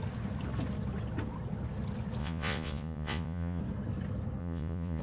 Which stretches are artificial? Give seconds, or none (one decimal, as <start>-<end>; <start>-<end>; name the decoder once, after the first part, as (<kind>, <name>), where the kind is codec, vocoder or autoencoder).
2.2-3.6 (vocoder, Vocos); 4.4-5.0